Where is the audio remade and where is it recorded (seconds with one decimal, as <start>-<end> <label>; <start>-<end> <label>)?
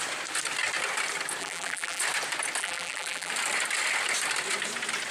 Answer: 0.0-1.4 recorded; 1.4-2.0 remade; 2.0-2.6 recorded; 2.6-3.3 remade; 3.3-5.1 recorded